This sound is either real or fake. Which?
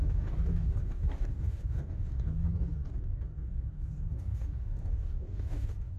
fake